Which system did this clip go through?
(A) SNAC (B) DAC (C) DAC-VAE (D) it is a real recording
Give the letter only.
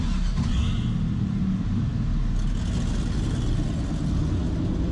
D